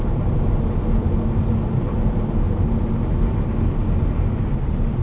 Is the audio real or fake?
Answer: real